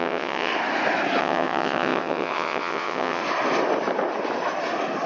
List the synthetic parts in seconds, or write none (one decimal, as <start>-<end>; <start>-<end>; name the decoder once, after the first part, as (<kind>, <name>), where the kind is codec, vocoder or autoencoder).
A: 0.0-0.5 (vocoder, WaveNeXt); 1.2-3.2

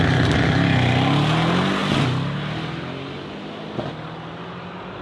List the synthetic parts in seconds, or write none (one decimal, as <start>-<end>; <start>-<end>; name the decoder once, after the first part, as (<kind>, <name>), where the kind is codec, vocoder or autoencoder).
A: none

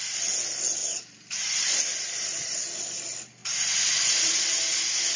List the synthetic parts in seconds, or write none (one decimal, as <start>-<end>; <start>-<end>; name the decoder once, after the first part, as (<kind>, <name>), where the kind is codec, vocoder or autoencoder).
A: 0.8-2.7 (vocoder, BigVGAN v2); 3.4-4.6

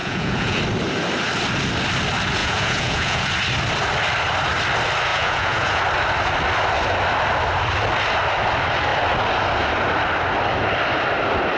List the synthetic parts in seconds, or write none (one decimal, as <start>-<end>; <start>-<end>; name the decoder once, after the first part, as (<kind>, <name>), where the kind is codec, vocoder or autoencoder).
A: 0.0-0.6 (vocoder, Vocos); 2.4-3.3; 5.1-5.8

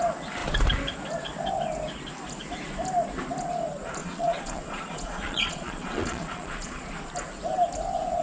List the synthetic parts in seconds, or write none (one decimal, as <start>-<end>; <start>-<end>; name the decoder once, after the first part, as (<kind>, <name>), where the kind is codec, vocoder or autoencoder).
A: 4.0-6.9 (vocoder, Vocos)

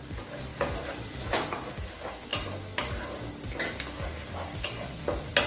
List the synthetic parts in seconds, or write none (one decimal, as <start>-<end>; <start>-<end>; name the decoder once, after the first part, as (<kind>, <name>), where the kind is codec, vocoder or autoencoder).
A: none

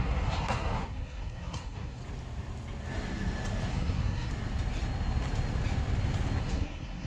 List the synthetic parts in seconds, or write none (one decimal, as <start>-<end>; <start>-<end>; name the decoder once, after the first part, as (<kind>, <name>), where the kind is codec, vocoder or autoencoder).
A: 0.0-2.0 (codec, SNAC); 3.7-4.3; 6.4-7.1